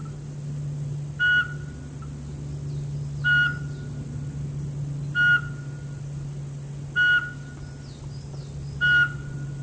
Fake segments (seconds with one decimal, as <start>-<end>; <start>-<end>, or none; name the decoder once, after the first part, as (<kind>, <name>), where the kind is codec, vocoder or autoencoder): none